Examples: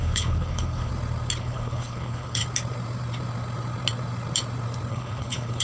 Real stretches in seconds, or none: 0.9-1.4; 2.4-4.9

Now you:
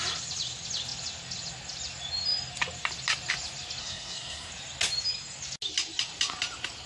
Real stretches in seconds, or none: 0.0-3.8; 4.5-6.9